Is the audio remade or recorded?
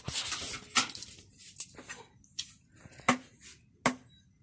recorded